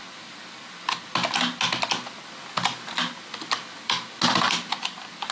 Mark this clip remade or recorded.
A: recorded